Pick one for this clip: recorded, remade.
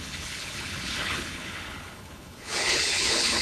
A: remade